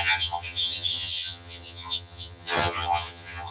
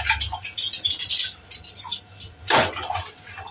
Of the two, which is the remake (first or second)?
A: first